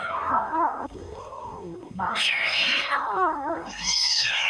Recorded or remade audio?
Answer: remade